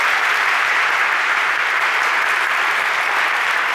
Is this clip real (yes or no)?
yes